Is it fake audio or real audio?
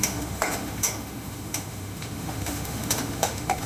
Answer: fake